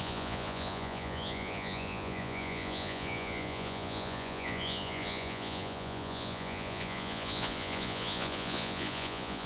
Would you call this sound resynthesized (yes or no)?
yes